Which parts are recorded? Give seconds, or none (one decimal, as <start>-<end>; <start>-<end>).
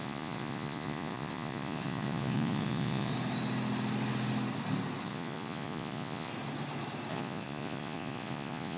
3.1-5.0; 6.3-7.1